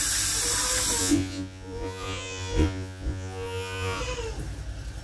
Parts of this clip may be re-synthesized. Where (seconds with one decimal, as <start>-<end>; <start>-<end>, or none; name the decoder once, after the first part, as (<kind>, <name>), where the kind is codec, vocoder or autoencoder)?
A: 1.0-4.0 (vocoder, Vocos)